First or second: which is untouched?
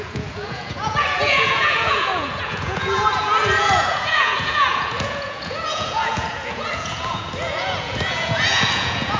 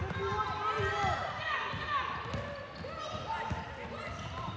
second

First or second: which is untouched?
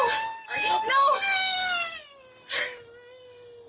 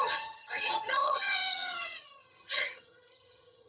first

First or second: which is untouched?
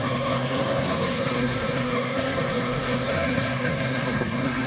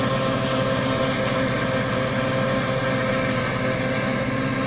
second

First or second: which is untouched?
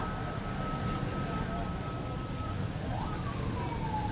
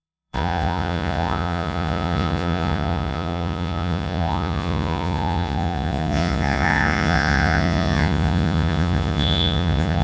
first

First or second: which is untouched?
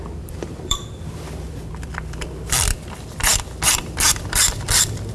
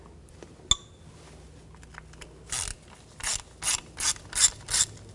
second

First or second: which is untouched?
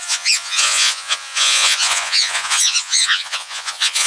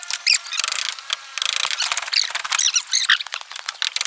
second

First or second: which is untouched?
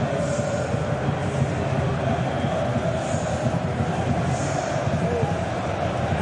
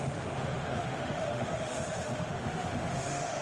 first